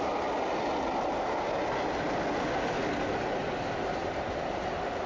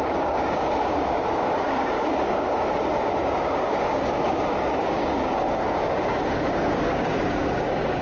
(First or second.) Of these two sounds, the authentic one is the first